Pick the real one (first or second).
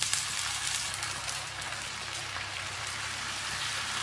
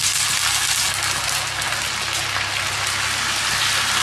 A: second